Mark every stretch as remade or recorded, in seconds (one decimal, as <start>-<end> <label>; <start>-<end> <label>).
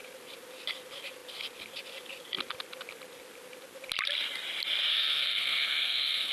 0.0-4.9 recorded; 4.9-6.3 remade